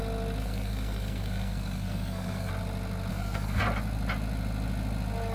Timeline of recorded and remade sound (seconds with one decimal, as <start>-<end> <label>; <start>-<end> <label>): 0.0-0.4 recorded; 0.4-2.5 remade; 2.5-3.1 recorded; 3.1-3.6 remade; 3.6-5.3 recorded